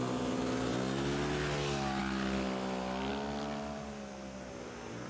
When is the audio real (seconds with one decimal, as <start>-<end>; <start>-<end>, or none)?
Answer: 0.0-5.1